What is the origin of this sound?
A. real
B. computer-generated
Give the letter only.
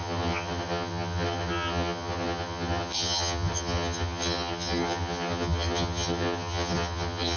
B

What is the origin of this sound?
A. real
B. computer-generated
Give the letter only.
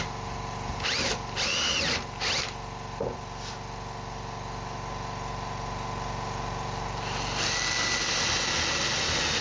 A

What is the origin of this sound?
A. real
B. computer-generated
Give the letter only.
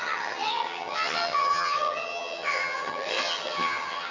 B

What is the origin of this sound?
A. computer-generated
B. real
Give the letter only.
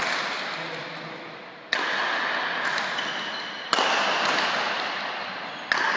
B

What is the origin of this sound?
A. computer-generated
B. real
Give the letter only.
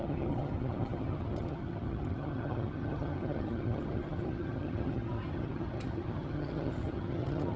A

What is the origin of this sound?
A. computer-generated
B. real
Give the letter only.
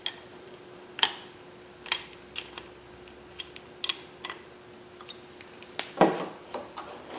B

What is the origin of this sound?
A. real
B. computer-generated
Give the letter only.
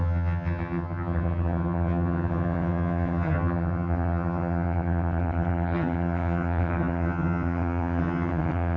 B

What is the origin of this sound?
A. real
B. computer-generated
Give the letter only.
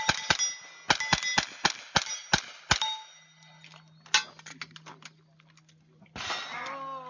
A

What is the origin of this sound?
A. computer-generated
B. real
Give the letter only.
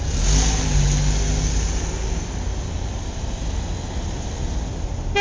B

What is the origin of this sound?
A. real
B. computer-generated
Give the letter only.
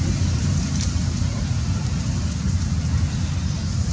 A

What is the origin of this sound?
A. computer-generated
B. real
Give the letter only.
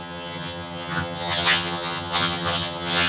A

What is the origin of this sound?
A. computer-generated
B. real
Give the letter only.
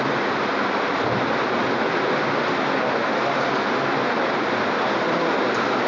B